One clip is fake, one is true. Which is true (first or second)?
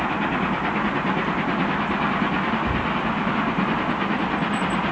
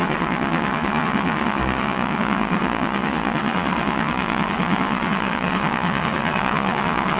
first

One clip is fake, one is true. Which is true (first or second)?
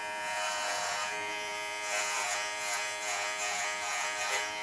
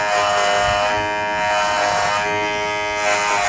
second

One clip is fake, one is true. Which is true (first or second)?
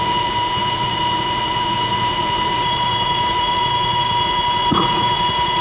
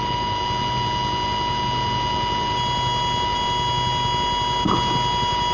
second